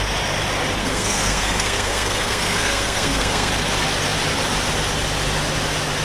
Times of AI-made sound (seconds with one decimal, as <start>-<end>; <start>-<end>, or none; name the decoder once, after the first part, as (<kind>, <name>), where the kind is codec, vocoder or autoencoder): 0.8-3.5 (codec, SNAC)